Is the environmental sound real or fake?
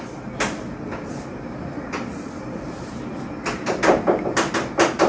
real